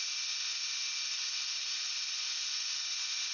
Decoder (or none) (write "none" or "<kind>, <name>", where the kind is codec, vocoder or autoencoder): none